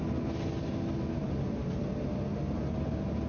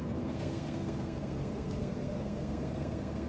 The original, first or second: first